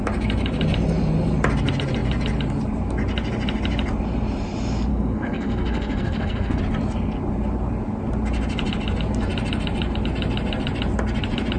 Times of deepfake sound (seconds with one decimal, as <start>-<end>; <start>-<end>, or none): 4.9-6.6